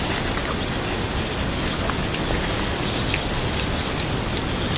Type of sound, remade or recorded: recorded